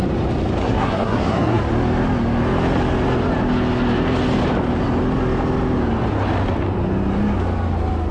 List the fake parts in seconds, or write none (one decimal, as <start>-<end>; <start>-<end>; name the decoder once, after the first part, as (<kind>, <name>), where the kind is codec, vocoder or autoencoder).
0.6-1.6 (codec, SNAC)